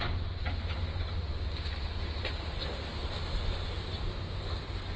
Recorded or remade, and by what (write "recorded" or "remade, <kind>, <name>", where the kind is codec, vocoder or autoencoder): recorded